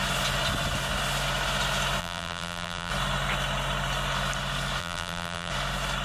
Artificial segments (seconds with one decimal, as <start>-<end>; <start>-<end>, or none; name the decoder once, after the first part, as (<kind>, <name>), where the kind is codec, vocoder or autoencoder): 2.0-2.9 (vocoder, BigVGAN v2); 4.8-5.5